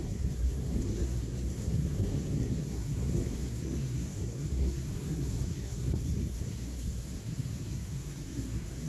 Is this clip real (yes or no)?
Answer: no